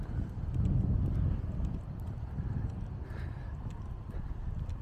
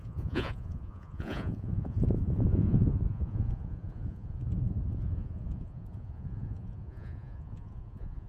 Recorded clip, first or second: first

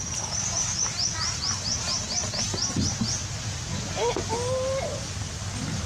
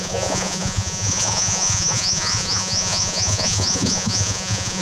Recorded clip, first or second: first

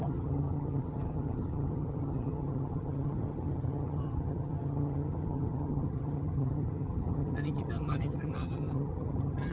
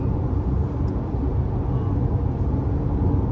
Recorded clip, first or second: second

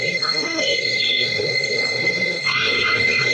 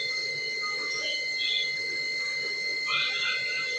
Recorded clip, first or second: second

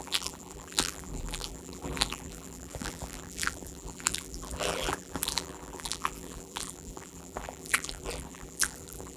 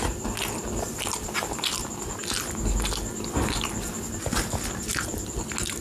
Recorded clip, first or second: second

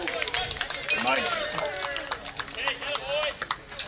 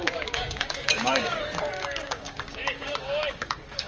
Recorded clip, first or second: first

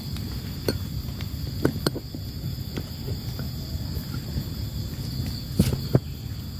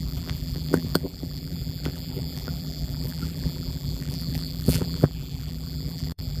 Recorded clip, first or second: first